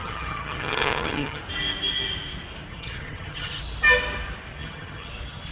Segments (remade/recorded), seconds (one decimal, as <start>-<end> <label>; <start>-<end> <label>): 0.0-1.4 remade; 1.4-2.7 recorded; 2.7-3.6 remade; 3.6-4.6 recorded; 4.6-5.1 remade; 5.1-5.5 recorded